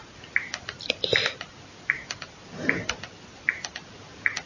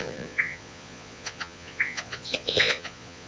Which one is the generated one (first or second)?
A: second